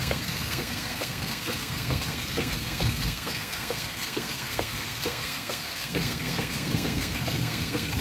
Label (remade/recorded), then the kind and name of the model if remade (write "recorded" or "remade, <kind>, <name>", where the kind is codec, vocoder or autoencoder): remade, codec, SNAC